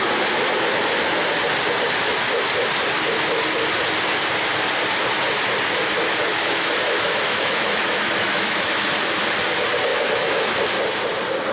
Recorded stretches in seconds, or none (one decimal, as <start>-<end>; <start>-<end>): 0.0-6.3; 8.8-9.9; 10.6-11.5